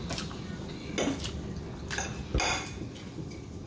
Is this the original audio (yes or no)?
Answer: yes